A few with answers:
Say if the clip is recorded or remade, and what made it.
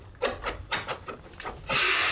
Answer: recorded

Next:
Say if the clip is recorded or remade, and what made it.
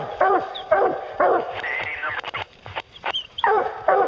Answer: remade, vocoder, BigVGAN v2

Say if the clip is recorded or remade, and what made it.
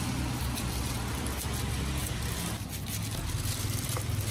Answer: recorded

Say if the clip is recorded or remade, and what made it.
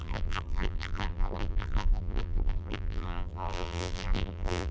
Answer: remade, vocoder, BigVGAN v2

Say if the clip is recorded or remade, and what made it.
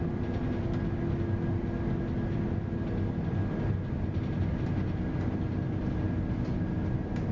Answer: recorded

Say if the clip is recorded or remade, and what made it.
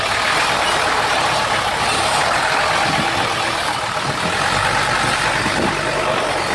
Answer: recorded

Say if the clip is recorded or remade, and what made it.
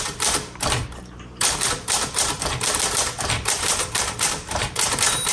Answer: remade, vocoder, BigVGAN v2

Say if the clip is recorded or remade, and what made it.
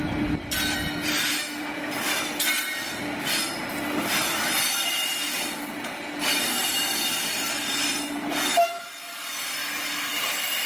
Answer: recorded